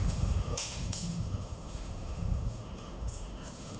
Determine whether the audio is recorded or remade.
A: remade